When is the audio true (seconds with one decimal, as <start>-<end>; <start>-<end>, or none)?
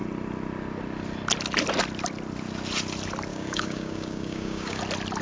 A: 0.0-3.3; 4.8-5.2